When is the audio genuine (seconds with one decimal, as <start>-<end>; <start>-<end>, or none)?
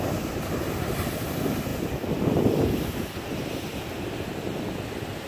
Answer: 0.0-5.3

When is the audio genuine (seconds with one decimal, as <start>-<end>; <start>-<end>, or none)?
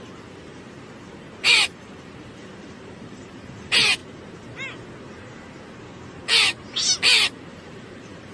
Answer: 4.0-7.5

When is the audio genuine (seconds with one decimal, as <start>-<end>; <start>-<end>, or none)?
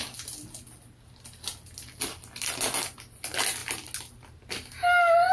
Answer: 0.0-5.3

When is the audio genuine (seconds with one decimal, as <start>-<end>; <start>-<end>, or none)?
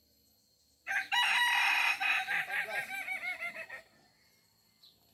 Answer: 0.0-0.4; 3.5-5.1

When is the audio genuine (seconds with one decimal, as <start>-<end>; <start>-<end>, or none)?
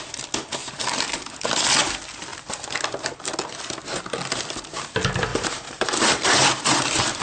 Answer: 0.0-0.6; 1.3-5.3